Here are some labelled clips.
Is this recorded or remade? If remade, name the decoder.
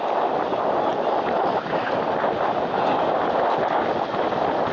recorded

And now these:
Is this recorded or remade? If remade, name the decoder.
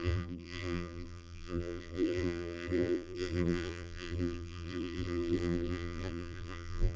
remade, vocoder, BigVGAN v2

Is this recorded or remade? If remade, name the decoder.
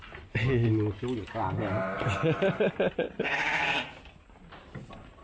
recorded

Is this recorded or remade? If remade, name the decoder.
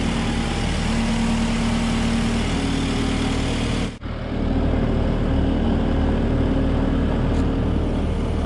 recorded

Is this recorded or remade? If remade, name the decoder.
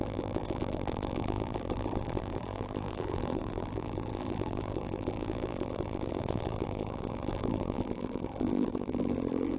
remade, vocoder, BigVGAN v2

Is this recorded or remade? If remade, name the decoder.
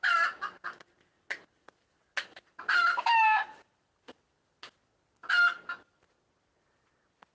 recorded